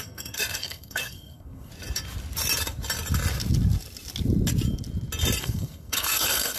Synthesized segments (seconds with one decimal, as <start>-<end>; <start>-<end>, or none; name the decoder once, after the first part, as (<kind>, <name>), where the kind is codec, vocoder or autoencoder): 0.0-1.7 (codec, SNAC); 5.4-6.6